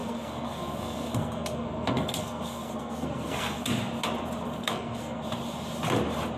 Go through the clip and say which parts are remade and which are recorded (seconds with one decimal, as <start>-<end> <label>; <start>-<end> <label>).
0.0-3.6 remade; 3.6-4.6 recorded; 4.6-5.2 remade; 5.2-6.4 recorded